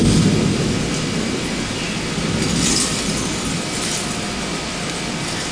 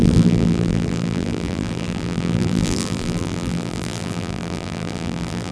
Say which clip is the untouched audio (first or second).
first